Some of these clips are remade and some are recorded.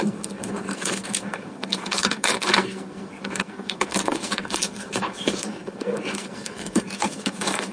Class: remade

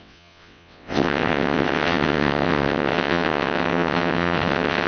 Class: remade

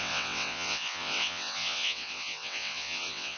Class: remade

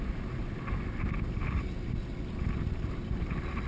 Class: recorded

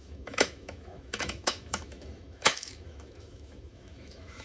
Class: remade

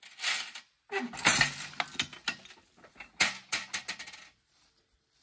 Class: recorded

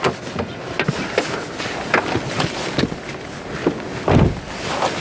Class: recorded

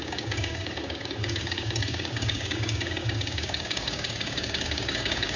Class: remade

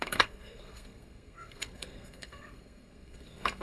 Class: remade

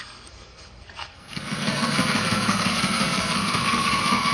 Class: remade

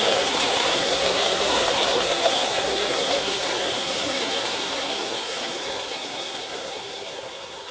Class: remade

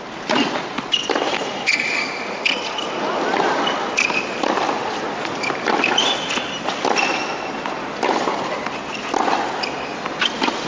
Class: recorded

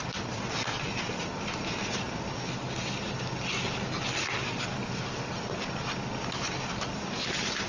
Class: recorded